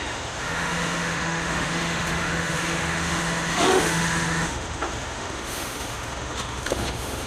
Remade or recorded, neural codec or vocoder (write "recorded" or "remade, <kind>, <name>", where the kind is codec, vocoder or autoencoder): remade, autoencoder, DAC-VAE